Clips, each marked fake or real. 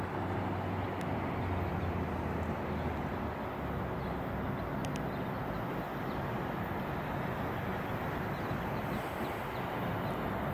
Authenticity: real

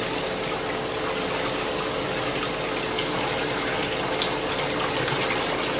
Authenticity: real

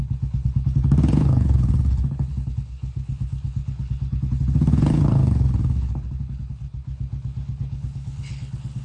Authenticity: fake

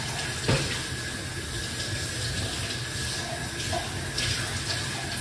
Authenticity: real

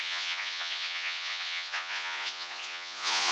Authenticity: fake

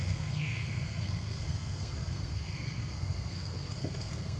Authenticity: fake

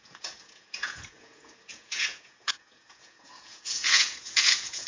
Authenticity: fake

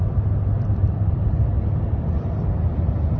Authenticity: real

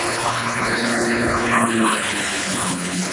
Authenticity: fake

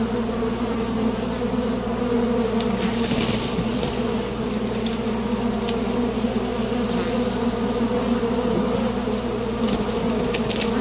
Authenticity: real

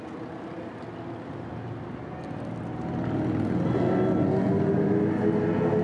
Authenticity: real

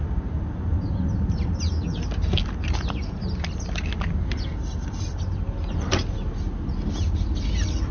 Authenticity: real